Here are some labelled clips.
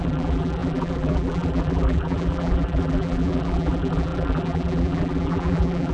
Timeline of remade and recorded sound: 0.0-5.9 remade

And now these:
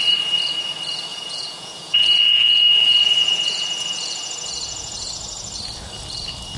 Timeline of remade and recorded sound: 0.0-1.1 recorded; 1.1-5.1 remade; 5.1-6.6 recorded

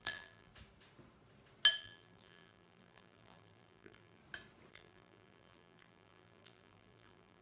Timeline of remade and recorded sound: 0.0-0.5 remade; 0.5-1.8 recorded; 1.8-4.2 remade; 4.2-4.7 recorded; 4.7-7.4 remade

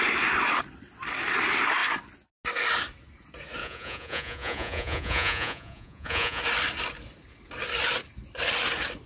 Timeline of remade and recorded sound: 0.0-3.6 recorded; 3.6-6.4 remade; 6.4-9.1 recorded

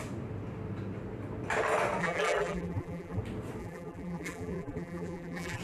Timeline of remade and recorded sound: 0.0-2.0 recorded; 2.0-3.2 remade; 3.2-3.6 recorded; 3.6-5.6 remade

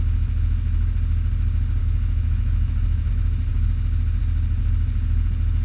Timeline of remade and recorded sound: 0.0-1.8 recorded; 1.8-3.1 remade; 3.1-5.6 recorded

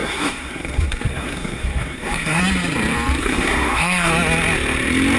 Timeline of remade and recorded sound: 0.0-2.4 remade; 2.4-3.2 recorded; 3.2-4.1 remade; 4.1-5.2 recorded

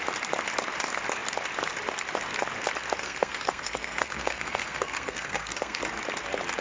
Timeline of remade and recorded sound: 0.0-3.0 recorded; 3.0-5.8 remade; 5.8-6.6 recorded